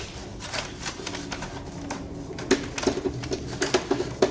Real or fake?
real